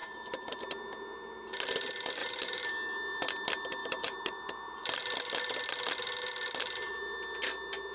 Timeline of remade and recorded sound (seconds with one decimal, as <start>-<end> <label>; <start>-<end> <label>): 0.0-0.6 remade; 0.6-2.2 recorded; 2.2-2.7 remade; 2.7-3.8 recorded; 3.8-4.4 remade; 4.4-7.9 recorded